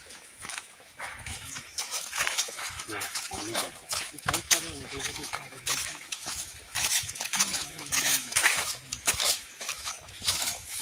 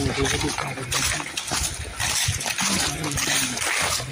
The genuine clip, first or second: second